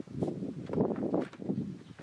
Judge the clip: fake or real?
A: real